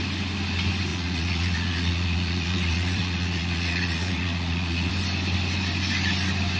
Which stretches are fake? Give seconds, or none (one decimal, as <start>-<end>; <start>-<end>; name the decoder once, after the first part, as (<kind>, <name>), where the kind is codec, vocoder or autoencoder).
0.9-4.9 (vocoder, Vocos)